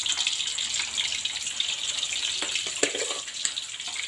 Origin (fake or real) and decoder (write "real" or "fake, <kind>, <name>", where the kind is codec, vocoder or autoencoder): real